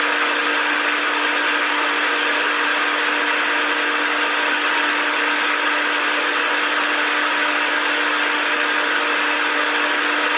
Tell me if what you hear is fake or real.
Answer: real